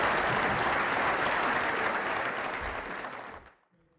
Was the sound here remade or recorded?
recorded